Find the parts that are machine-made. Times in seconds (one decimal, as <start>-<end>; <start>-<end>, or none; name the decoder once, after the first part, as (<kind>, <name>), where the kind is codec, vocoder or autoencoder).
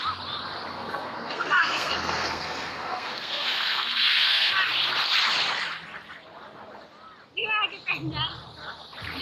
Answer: 0.7-4.5 (codec, SNAC)